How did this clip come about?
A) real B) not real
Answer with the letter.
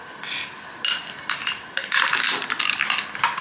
A